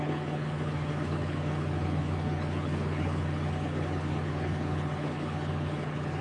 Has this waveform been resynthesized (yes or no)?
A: yes